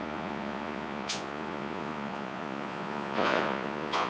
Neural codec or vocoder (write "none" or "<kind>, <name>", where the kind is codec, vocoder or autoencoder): vocoder, Vocos